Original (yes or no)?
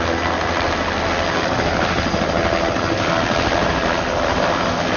yes